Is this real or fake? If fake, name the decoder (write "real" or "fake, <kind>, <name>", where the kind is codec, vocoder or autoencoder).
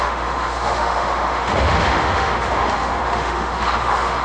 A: fake, autoencoder, DAC-VAE